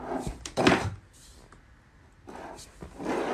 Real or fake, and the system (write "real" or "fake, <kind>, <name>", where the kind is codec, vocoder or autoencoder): real